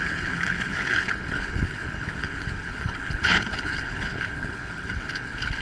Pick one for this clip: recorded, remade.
remade